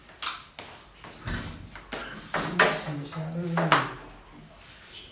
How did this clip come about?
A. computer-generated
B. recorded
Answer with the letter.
B